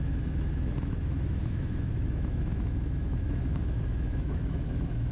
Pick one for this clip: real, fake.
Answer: fake